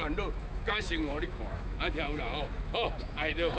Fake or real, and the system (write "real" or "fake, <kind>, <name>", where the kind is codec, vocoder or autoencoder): fake, autoencoder, DAC-VAE